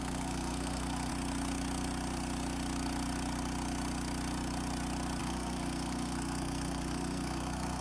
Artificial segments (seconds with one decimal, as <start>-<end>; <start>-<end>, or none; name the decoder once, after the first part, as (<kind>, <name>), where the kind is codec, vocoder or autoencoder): 0.0-1.1 (codec, SNAC); 5.2-7.8